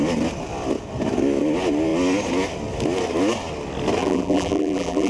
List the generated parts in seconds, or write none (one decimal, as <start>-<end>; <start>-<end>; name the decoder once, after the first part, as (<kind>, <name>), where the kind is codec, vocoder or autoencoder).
4.0-5.1 (vocoder, BigVGAN v2)